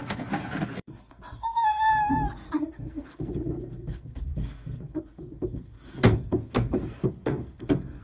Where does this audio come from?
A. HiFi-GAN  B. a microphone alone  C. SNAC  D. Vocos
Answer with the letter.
C